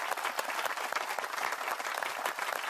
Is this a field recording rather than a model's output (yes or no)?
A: yes